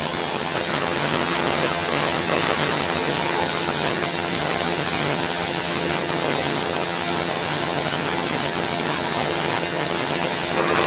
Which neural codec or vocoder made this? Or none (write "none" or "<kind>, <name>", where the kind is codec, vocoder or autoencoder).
vocoder, HiFi-GAN